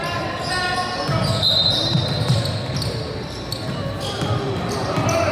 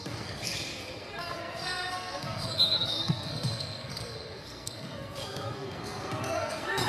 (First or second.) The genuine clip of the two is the first